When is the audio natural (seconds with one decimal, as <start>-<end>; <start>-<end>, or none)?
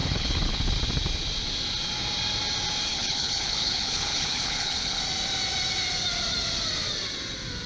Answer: 0.7-2.9; 5.0-7.7